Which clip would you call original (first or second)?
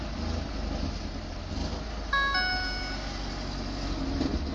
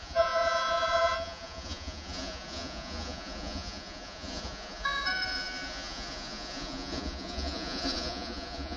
first